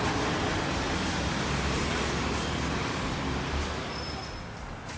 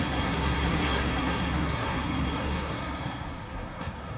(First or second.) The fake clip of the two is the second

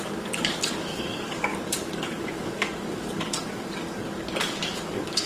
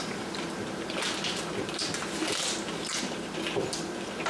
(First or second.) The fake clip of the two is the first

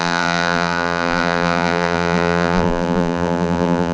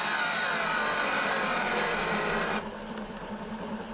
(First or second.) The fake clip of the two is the first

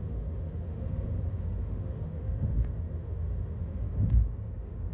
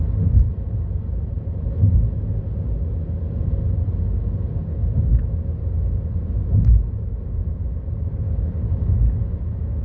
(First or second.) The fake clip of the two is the first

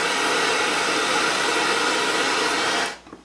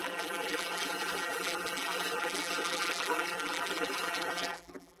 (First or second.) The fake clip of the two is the second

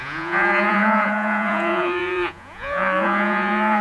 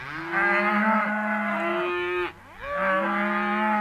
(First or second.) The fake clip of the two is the first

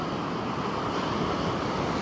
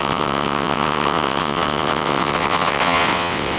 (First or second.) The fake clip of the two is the second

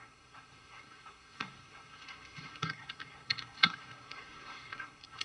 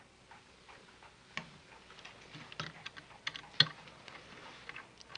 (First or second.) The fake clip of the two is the first